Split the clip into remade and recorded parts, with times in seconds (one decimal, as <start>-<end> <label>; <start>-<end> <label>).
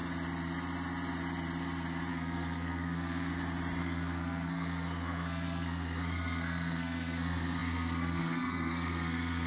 0.0-2.1 recorded; 2.1-3.3 remade; 3.3-3.8 recorded; 3.8-9.5 remade